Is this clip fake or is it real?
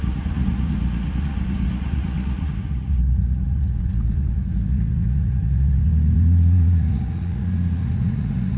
fake